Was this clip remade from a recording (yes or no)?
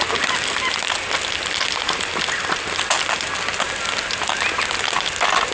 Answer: no